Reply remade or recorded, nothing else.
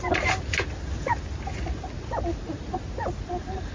recorded